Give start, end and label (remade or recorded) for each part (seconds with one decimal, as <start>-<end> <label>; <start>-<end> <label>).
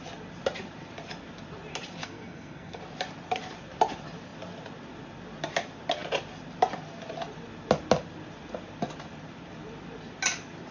0.0-2.0 recorded; 2.0-2.8 remade; 2.8-10.7 recorded